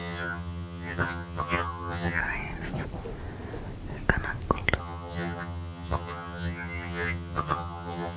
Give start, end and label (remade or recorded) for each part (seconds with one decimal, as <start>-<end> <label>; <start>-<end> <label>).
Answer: 0.0-2.2 remade; 2.2-4.8 recorded; 4.8-8.2 remade